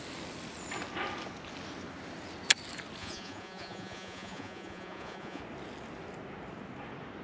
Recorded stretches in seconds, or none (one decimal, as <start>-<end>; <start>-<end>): 0.0-3.0; 5.4-7.2